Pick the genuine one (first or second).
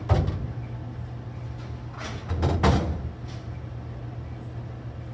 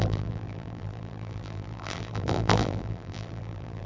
first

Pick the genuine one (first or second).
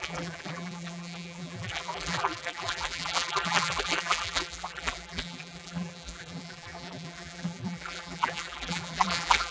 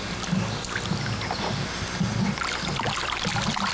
second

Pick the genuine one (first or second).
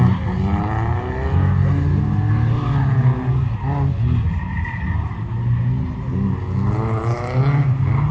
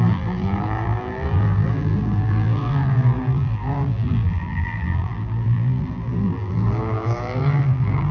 first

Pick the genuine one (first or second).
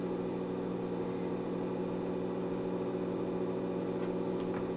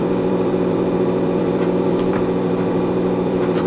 first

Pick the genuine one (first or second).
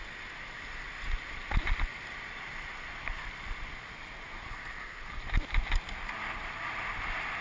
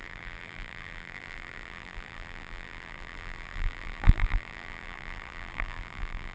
first